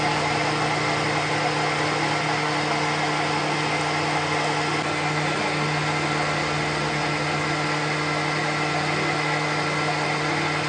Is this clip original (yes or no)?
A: yes